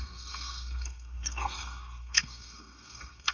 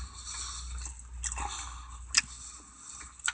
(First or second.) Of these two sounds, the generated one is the first